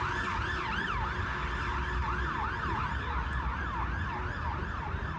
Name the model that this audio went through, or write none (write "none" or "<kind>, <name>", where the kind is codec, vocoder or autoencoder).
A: none